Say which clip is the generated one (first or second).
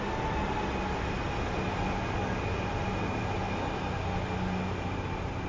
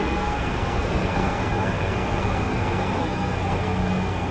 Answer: second